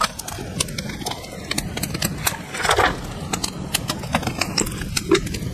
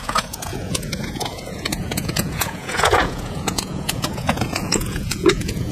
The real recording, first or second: first